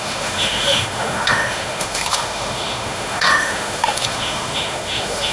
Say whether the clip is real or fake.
fake